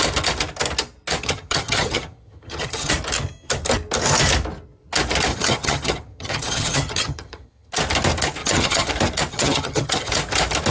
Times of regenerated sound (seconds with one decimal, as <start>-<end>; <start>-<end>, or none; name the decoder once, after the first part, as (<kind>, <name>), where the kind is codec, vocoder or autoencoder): 1.2-2.9 (vocoder, HiFi-GAN); 5.3-7.7; 8.4-8.9; 9.3-10.1